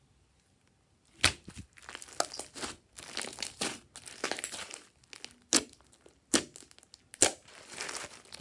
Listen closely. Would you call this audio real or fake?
real